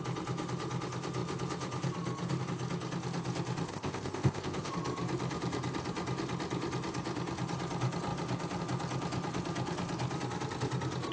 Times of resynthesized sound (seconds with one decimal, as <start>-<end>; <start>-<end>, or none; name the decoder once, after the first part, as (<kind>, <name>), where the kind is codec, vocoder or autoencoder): 3.7-4.7 (codec, ZipCodec)